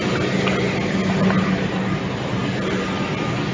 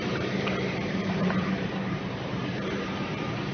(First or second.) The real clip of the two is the first